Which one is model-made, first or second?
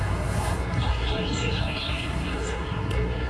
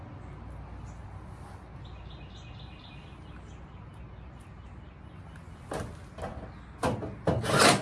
first